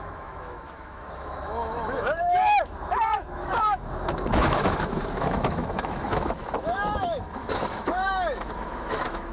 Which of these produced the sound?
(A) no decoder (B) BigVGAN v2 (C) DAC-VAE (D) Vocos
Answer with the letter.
C